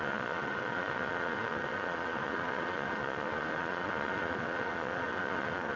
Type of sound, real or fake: fake